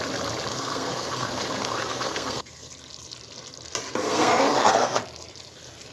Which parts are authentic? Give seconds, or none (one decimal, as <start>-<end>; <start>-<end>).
0.0-0.5; 2.7-4.0; 5.0-5.9